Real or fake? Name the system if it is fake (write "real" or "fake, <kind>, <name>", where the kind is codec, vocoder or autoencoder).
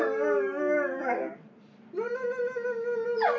real